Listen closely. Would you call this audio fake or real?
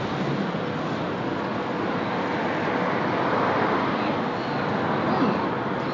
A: real